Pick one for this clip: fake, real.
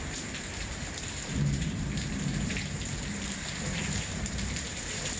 fake